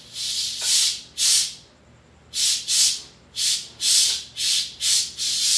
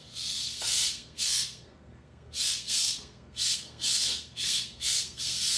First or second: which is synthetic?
second